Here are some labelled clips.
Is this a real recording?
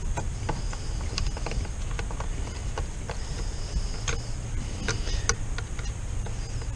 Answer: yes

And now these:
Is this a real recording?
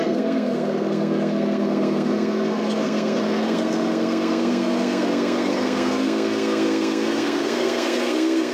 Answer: no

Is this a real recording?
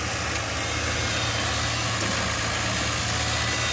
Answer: yes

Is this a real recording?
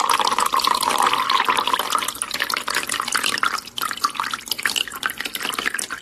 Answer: yes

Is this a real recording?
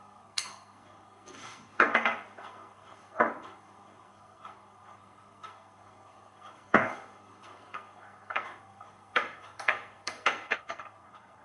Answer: no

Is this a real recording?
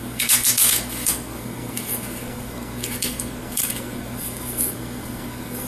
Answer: no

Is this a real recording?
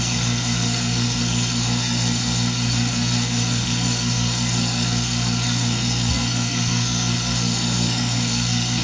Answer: no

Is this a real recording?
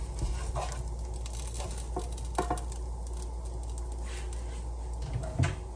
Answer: yes